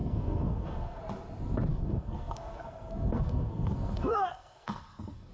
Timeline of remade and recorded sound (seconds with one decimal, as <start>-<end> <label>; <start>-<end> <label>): 0.0-1.0 remade; 1.0-1.7 recorded; 1.7-5.3 remade